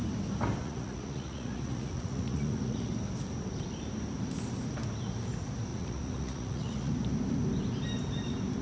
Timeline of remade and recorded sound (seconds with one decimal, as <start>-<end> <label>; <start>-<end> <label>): 0.0-0.6 recorded; 0.6-2.9 remade; 2.9-5.7 recorded; 5.7-6.9 remade; 6.9-8.6 recorded